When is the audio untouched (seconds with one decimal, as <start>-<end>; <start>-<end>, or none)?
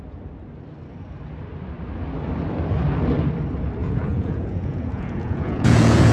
0.0-3.8